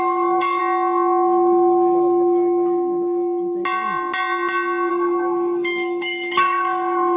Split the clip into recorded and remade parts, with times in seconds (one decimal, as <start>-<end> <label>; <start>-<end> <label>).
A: 0.0-0.6 remade; 0.6-4.9 recorded; 4.9-7.2 remade